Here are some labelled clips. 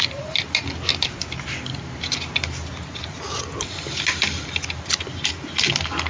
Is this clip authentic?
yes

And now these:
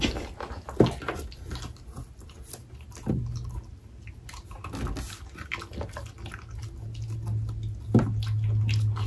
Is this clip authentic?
yes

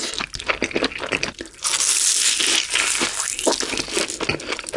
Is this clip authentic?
yes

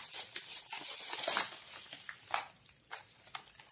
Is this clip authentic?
yes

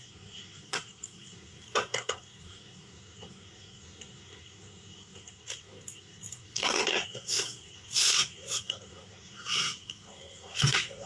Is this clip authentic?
no